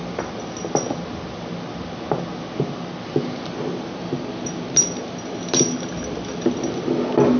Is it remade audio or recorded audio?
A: recorded